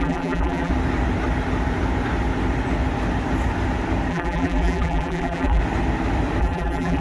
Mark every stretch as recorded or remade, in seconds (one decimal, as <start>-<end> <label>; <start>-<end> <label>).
0.0-0.7 remade; 0.7-4.1 recorded; 4.1-5.6 remade; 5.6-6.4 recorded; 6.4-7.0 remade